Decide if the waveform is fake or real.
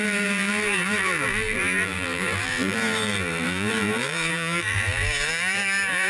fake